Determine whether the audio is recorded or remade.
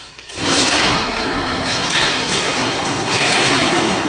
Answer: remade